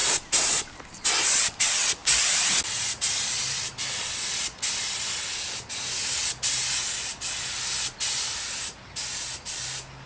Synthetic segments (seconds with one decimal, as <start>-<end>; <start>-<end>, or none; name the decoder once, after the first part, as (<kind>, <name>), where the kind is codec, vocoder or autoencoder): none